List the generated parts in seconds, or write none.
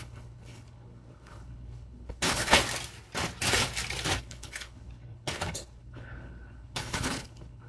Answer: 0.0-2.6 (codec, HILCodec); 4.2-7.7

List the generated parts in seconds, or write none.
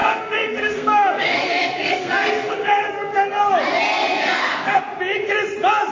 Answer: 0.0-3.5 (codec, SNAC); 4.2-4.8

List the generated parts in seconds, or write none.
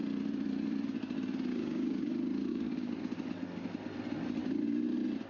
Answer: 1.5-2.0 (codec, DAC); 2.5-3.0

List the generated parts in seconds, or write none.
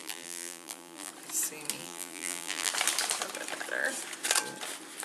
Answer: 0.0-1.1 (vocoder, BigVGAN v2); 1.8-2.7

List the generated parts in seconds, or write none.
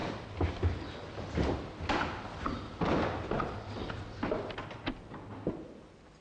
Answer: none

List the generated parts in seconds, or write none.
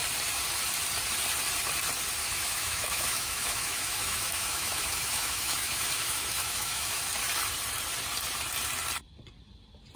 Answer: 2.2-7.0 (autoencoder, DAC-VAE)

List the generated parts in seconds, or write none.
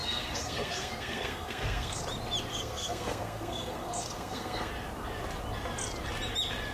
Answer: 0.0-2.0 (codec, SNAC); 2.5-4.7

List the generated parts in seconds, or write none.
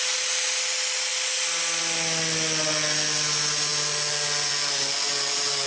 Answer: none